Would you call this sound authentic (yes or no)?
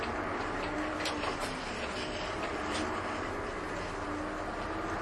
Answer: yes